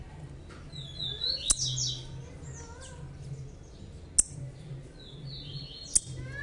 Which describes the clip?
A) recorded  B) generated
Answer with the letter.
A